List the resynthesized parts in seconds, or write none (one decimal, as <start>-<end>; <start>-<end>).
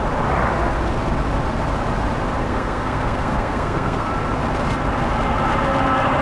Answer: 2.4-4.1